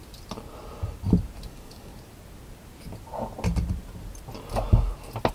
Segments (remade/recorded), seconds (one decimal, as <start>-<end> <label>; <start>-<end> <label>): 0.0-1.5 recorded; 1.5-1.9 remade; 1.9-5.3 recorded